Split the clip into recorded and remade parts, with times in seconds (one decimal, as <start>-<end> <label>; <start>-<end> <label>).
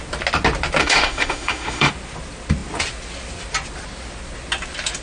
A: 0.0-0.8 recorded; 0.8-1.9 remade; 1.9-5.0 recorded